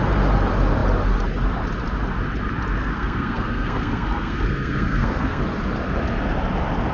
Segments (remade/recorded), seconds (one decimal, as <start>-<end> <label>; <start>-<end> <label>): 0.0-2.8 recorded; 2.8-5.4 remade; 5.4-6.9 recorded